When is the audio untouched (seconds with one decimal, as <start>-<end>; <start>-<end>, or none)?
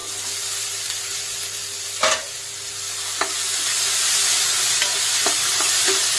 0.0-0.6; 1.6-5.1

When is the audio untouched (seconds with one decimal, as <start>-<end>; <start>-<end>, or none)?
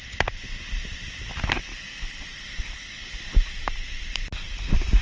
0.0-5.0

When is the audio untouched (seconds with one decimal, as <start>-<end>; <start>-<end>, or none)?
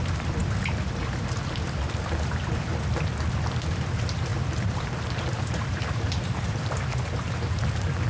0.4-1.0; 2.7-3.7